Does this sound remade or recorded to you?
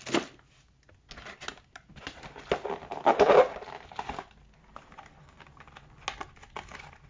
recorded